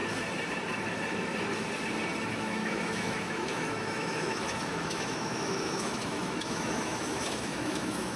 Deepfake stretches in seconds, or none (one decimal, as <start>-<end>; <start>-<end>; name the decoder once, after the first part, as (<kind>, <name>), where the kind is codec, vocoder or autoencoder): 2.3-8.2 (autoencoder, DAC-VAE)